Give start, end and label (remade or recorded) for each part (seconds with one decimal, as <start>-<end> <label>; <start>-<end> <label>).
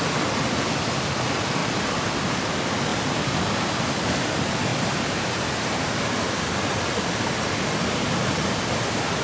0.0-1.6 recorded; 1.6-2.4 remade; 2.4-2.9 recorded; 2.9-3.9 remade; 3.9-4.7 recorded; 4.7-6.5 remade; 6.5-9.2 recorded